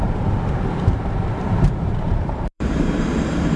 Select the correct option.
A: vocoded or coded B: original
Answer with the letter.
A